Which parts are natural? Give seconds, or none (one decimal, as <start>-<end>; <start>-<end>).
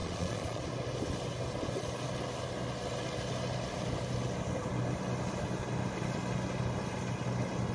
0.6-7.7